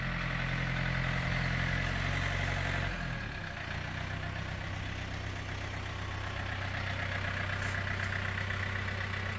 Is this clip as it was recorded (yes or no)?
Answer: yes